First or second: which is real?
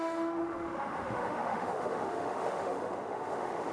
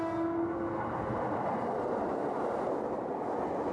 second